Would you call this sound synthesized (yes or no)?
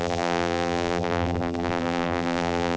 yes